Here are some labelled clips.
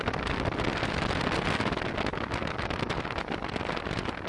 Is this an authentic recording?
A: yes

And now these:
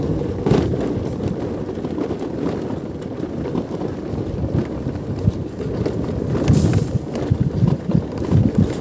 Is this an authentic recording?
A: no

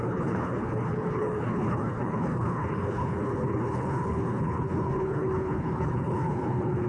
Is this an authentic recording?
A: no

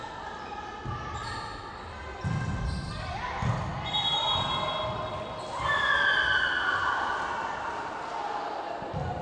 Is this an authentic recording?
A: yes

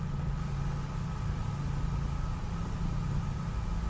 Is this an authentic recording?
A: yes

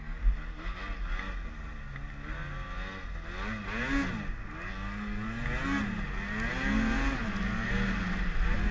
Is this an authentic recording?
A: yes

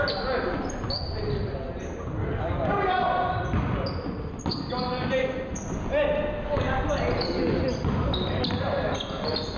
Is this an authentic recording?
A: yes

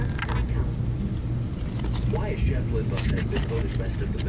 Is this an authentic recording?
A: yes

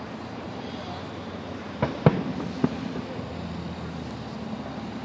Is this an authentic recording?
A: yes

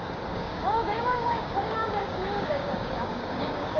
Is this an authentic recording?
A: no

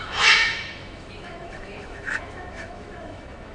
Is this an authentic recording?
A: no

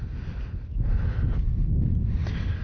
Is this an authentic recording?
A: yes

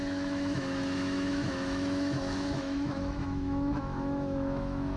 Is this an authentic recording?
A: no